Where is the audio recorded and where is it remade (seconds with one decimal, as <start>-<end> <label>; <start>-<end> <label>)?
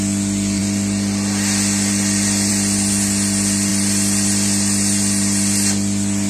0.0-6.3 recorded